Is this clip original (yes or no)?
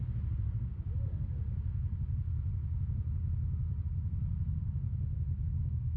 yes